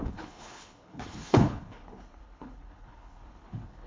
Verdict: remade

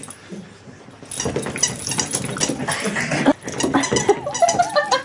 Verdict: recorded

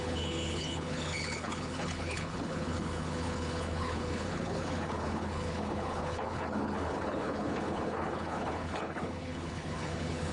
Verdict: remade